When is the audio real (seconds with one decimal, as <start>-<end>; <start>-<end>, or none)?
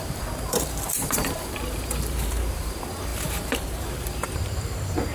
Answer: none